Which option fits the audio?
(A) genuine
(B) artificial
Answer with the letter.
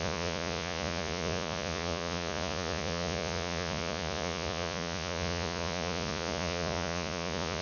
B